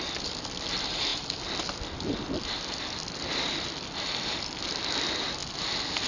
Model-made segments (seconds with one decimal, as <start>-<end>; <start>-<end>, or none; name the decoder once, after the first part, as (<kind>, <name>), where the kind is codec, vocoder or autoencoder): none